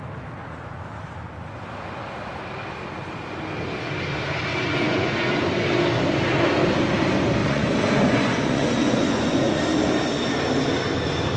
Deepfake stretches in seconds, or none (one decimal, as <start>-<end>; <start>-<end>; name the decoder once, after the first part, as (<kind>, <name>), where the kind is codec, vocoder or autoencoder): 4.5-5.3 (vocoder, Vocos); 7.4-9.6